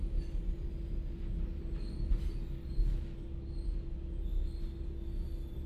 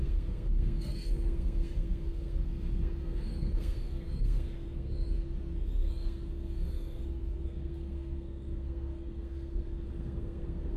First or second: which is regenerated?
second